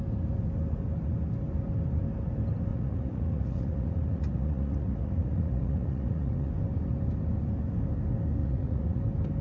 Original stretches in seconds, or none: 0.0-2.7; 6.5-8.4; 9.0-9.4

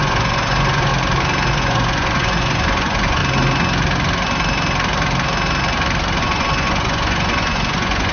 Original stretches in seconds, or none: 0.9-1.5; 3.2-6.2

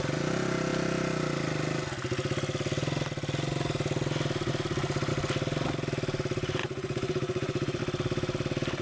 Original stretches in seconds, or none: 0.0-6.6; 7.8-8.8

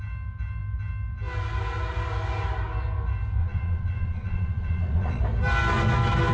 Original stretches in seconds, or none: 0.0-3.4; 5.2-6.3